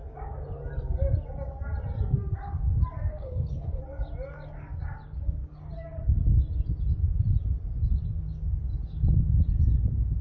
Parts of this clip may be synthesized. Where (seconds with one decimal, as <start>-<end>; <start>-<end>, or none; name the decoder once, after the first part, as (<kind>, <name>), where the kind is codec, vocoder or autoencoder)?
3.1-3.8 (codec, HILCodec)